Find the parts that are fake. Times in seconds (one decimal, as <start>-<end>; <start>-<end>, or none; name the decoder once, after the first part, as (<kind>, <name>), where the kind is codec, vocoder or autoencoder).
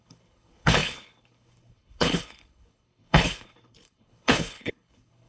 0.0-5.3 (codec, HILCodec)